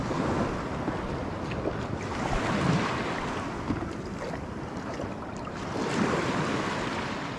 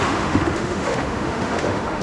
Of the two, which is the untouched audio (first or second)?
first